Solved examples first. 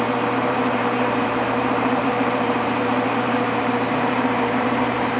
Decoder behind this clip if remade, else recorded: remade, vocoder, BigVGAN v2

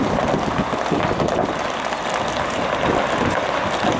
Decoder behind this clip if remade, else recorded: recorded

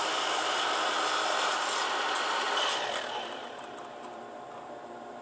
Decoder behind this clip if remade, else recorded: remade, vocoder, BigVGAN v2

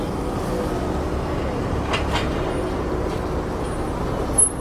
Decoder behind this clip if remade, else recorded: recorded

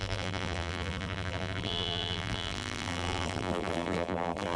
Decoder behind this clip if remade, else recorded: remade, vocoder, BigVGAN v2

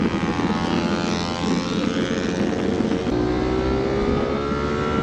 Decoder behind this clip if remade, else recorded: recorded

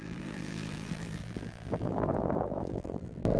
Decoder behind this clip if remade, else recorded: remade, vocoder, BigVGAN v2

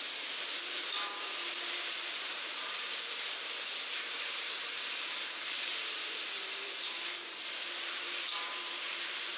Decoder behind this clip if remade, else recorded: remade, vocoder, BigVGAN v2